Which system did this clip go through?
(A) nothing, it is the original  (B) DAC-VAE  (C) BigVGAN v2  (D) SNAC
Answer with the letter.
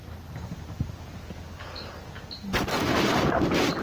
A